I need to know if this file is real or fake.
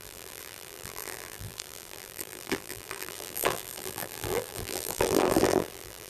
fake